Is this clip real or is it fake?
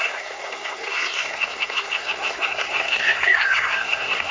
fake